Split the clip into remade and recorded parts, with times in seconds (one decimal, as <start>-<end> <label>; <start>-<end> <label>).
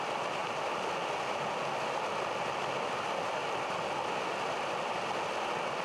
0.0-5.8 recorded